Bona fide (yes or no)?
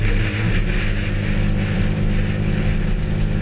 yes